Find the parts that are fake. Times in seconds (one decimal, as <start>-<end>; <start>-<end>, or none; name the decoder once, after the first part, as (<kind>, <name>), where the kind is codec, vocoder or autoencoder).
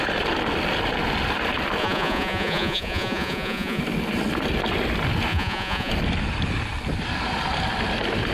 1.8-3.8 (vocoder, Vocos); 5.3-5.9